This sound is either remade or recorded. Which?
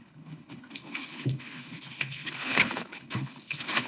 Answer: remade